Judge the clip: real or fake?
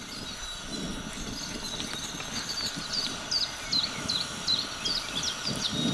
real